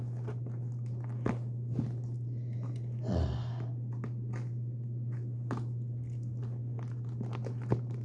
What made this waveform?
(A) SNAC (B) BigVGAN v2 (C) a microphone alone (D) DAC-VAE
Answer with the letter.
C